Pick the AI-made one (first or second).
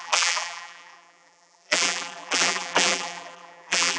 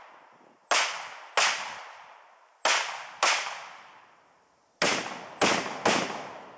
first